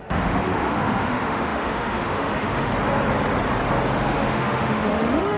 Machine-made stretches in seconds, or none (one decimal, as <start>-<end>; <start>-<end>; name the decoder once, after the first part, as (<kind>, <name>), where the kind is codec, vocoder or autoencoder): 0.0-2.7 (autoencoder, DAC-VAE); 3.9-5.4